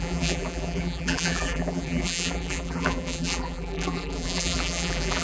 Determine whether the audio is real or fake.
fake